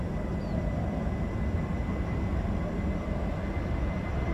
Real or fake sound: real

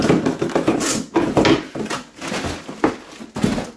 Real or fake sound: real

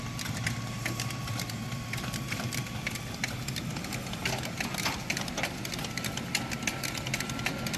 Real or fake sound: real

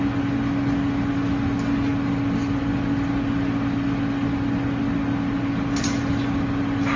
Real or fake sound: real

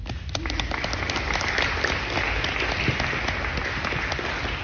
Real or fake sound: real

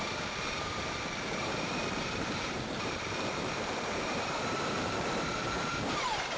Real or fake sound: fake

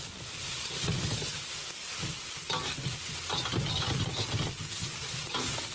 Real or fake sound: real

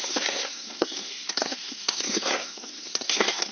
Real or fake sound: fake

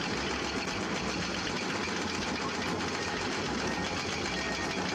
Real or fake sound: real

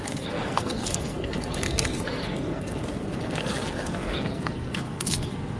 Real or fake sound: fake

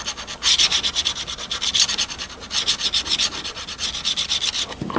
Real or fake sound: real